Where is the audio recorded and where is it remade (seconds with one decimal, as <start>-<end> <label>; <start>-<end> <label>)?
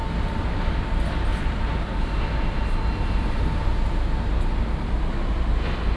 0.0-1.3 recorded; 1.3-2.2 remade; 2.2-3.0 recorded; 3.0-3.7 remade; 3.7-6.0 recorded